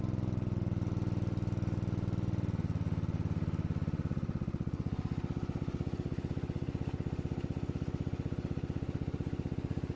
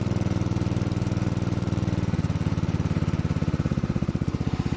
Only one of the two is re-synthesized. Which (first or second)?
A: second